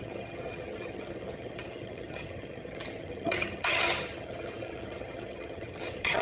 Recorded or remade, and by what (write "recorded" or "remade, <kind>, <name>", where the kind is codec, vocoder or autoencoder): remade, vocoder, HiFi-GAN